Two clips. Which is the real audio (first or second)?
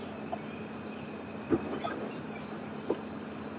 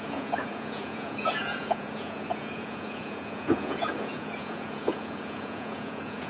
first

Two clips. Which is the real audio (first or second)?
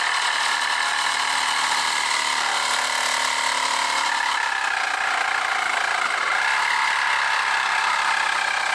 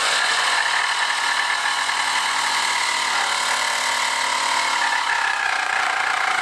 first